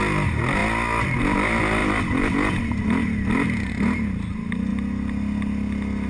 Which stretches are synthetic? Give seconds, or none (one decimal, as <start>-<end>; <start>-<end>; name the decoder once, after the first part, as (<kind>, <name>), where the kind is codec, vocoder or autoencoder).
none

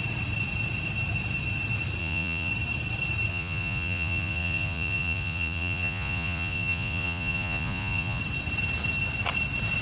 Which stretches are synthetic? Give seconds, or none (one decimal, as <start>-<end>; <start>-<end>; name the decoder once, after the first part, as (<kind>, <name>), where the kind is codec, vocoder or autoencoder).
2.0-2.5 (vocoder, Vocos); 3.3-8.2

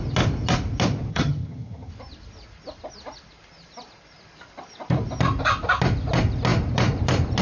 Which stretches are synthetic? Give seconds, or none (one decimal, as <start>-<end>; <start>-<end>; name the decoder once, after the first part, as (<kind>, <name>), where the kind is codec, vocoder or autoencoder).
1.1-1.9 (vocoder, HiFi-GAN)

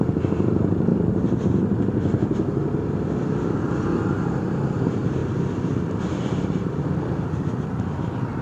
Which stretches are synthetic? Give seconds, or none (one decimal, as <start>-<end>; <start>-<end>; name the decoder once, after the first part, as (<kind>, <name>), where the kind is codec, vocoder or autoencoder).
5.2-8.4 (vocoder, BigVGAN v2)

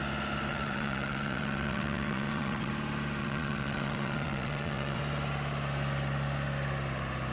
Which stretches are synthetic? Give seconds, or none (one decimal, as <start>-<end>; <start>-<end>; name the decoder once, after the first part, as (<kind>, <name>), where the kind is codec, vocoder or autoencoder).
0.5-2.7 (vocoder, WaveNeXt); 3.2-5.0

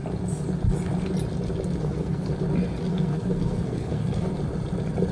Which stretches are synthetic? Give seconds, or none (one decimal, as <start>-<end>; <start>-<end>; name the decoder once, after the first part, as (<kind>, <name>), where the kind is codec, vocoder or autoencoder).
1.8-2.3 (codec, SNAC); 2.9-4.3

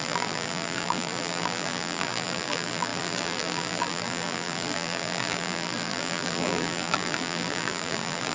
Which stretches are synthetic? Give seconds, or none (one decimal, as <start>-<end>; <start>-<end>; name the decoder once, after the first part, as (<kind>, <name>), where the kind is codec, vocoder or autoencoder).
0.0-8.3 (vocoder, BigVGAN v2)